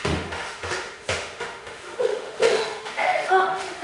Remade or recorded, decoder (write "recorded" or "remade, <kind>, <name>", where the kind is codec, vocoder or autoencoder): remade, autoencoder, DAC-VAE